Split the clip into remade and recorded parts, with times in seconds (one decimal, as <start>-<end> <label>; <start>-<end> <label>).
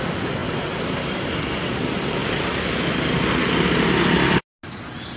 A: 0.0-0.4 recorded; 0.4-1.8 remade; 1.8-5.2 recorded